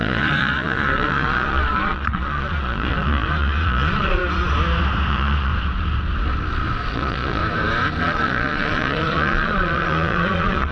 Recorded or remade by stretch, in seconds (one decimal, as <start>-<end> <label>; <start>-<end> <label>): 0.0-4.2 remade; 4.2-5.1 recorded; 5.1-5.5 remade; 5.5-6.9 recorded; 6.9-7.4 remade; 7.4-8.0 recorded; 8.0-10.7 remade